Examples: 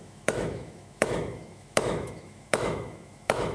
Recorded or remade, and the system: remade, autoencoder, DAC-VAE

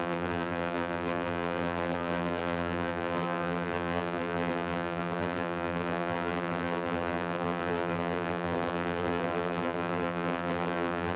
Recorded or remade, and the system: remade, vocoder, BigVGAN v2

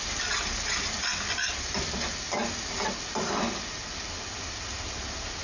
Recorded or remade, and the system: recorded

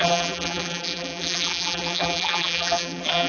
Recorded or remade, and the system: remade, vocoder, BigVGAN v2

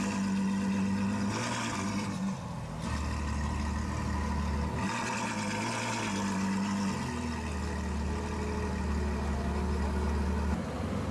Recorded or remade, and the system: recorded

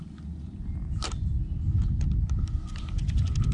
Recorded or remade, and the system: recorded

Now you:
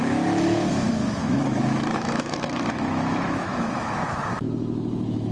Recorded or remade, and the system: remade, autoencoder, DAC-VAE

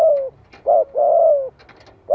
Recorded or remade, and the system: recorded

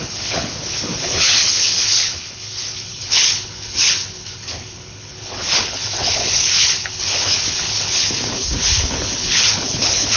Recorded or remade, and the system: remade, codec, HILCodec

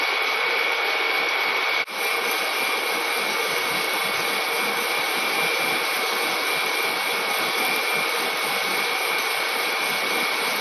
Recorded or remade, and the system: recorded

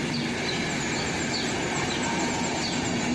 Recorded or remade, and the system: recorded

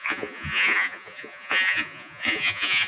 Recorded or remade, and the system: remade, vocoder, Vocos